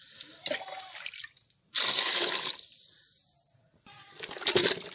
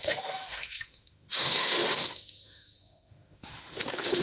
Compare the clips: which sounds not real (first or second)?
second